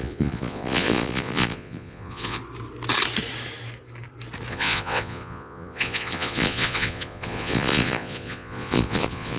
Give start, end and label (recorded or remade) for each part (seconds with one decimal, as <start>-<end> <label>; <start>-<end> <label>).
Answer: 0.0-2.4 remade; 2.4-4.5 recorded; 4.5-9.4 remade